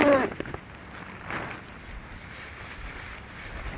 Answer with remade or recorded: recorded